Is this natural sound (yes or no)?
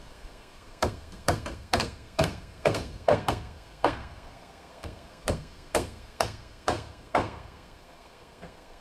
no